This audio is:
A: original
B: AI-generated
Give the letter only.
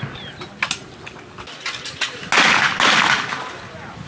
A